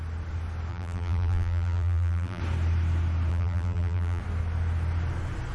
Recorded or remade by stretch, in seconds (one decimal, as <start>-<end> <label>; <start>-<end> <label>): 0.0-0.7 recorded; 0.7-2.4 remade; 2.4-3.3 recorded; 3.3-4.2 remade; 4.2-5.5 recorded